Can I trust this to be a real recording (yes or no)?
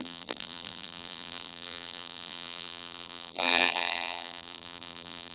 no